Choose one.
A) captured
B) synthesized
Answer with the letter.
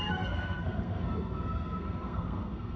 B